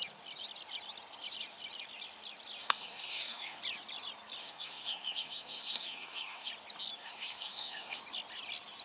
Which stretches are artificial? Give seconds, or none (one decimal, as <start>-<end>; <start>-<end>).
2.6-3.6; 4.4-6.5; 7.0-8.0